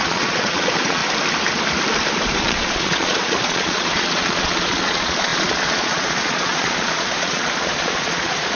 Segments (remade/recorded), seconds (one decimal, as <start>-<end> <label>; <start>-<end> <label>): 0.0-1.0 remade; 1.0-2.4 recorded; 2.4-8.5 remade